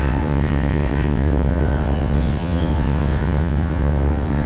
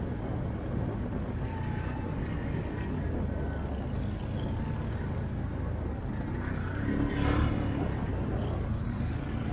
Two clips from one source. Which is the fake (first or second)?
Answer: first